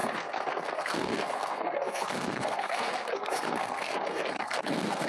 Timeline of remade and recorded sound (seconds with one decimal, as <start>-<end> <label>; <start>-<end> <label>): 0.0-5.1 remade